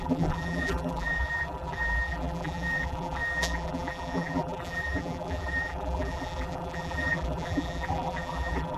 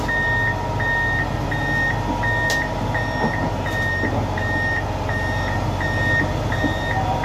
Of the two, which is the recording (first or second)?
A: second